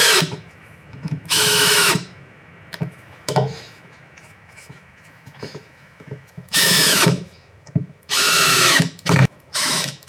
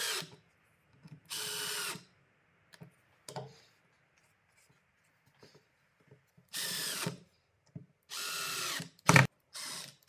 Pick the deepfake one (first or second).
first